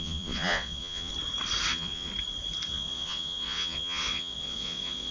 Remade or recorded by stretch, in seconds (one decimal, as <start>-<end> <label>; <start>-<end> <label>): 0.0-1.1 remade; 1.1-1.7 recorded; 1.7-2.1 remade; 2.1-2.7 recorded; 2.7-5.1 remade